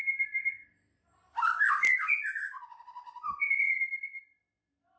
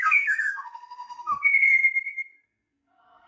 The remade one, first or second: second